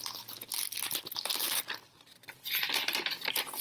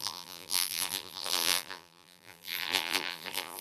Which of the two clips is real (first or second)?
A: first